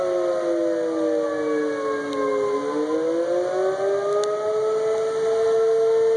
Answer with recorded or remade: recorded